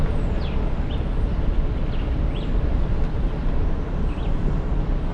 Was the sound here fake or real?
real